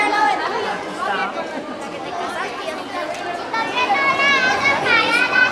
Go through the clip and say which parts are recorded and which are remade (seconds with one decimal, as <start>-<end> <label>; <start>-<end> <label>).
0.0-1.2 remade; 1.2-4.5 recorded; 4.5-5.5 remade